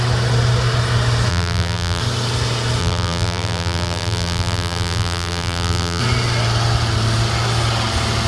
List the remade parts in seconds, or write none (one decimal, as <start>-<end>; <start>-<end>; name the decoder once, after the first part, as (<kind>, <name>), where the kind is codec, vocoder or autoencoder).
1.3-2.0 (vocoder, BigVGAN v2); 2.8-6.0